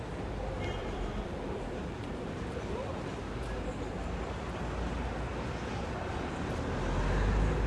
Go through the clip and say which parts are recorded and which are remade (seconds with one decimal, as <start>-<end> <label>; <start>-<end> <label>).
0.0-0.8 recorded; 0.8-3.3 remade; 3.3-5.3 recorded; 5.3-6.1 remade; 6.1-7.7 recorded